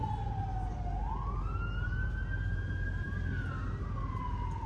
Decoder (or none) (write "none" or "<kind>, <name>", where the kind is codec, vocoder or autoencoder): none